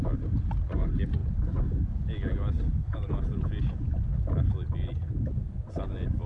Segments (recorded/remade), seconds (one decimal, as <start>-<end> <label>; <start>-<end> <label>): 0.0-1.2 recorded; 1.2-1.8 remade; 1.8-6.3 recorded

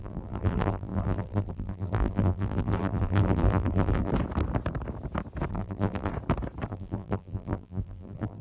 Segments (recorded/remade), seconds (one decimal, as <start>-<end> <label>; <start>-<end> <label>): 0.0-4.1 remade; 4.1-5.5 recorded; 5.5-6.1 remade; 6.1-6.7 recorded; 6.7-8.4 remade

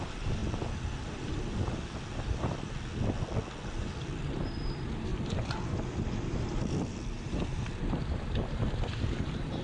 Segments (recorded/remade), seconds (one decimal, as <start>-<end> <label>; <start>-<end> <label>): 0.0-2.9 remade; 2.9-3.7 recorded; 3.7-9.6 remade